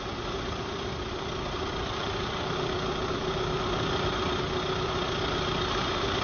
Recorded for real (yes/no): no